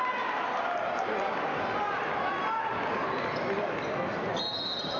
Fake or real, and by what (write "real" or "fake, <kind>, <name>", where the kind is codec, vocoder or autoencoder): real